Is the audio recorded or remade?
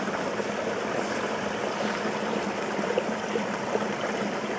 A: recorded